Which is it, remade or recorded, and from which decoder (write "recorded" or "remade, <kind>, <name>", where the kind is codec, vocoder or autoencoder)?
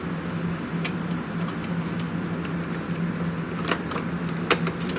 recorded